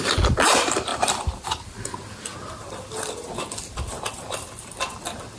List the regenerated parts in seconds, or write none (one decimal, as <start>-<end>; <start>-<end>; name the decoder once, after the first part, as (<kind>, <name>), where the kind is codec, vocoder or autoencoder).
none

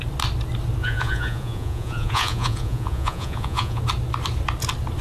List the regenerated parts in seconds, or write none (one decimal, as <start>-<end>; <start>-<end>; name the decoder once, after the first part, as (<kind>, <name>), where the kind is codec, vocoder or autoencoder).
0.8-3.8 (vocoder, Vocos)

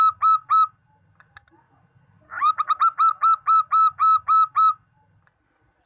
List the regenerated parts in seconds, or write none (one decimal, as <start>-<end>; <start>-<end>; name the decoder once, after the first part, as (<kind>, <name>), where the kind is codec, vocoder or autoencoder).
none

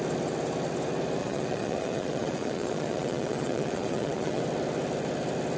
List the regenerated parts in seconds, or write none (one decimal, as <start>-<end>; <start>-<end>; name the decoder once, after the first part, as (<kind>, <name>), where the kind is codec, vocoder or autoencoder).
1.2-4.4 (vocoder, Vocos)